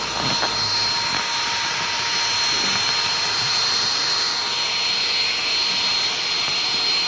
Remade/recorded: recorded